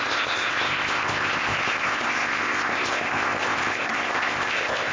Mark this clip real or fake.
fake